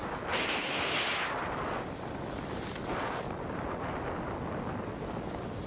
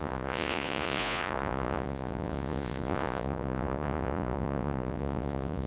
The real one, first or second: first